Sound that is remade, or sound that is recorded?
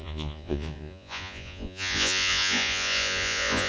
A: remade